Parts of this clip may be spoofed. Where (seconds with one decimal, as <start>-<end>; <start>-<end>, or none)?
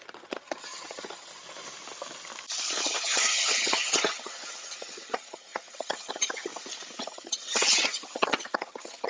0.0-1.3; 2.8-6.5; 7.0-9.1